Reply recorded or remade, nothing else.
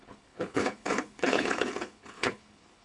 remade